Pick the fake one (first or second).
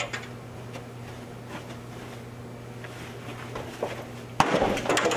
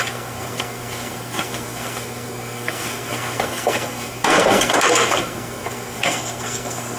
second